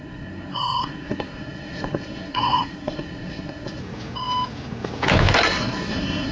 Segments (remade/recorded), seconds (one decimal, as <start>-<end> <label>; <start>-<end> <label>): 0.0-3.8 remade; 3.8-5.3 recorded; 5.3-6.3 remade